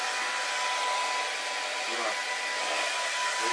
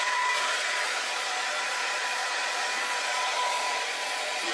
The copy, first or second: second